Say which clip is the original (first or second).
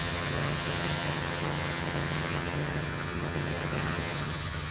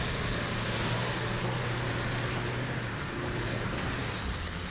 second